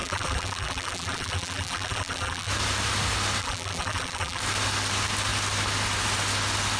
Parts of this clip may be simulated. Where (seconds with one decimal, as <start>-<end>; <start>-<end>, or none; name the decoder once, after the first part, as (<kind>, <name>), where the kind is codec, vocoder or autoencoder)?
0.0-2.5 (vocoder, BigVGAN v2); 3.4-4.4

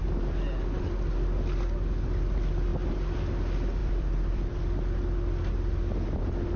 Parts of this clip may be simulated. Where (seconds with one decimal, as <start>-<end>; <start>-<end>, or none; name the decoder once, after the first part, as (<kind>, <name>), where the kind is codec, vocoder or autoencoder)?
3.8-4.6 (vocoder, BigVGAN v2)